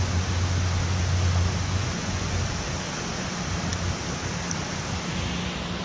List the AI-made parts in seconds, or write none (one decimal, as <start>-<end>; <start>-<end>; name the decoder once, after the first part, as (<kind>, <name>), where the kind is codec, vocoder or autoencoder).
1.6-2.4 (vocoder, Vocos)